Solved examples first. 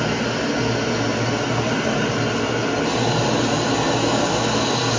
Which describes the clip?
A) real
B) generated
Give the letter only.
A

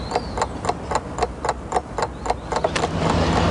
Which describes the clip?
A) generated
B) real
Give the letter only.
B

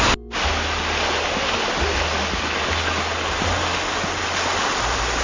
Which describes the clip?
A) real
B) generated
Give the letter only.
A